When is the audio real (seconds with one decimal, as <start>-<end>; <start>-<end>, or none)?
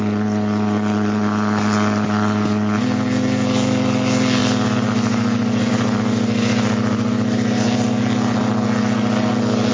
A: 0.0-9.7